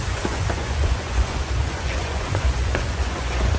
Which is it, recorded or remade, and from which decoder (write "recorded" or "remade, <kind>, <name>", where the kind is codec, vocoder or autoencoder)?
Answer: remade, vocoder, Vocos